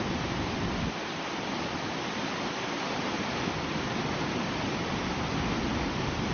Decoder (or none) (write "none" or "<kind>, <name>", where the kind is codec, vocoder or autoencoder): vocoder, BigVGAN v2